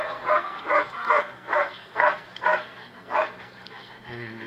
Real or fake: fake